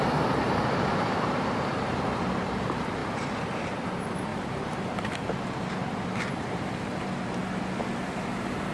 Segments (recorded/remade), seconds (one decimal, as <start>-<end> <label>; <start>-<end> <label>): 0.0-7.4 remade; 7.4-8.0 recorded; 8.0-8.7 remade